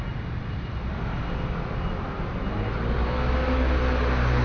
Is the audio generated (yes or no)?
no